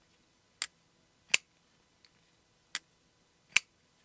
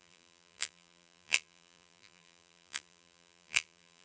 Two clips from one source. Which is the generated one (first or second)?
second